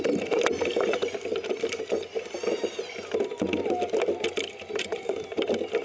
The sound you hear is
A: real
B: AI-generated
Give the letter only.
A